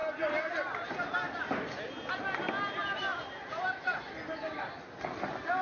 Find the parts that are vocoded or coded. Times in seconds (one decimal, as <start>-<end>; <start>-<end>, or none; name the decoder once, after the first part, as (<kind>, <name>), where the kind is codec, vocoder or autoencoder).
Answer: 3.1-4.6 (vocoder, BigVGAN v2)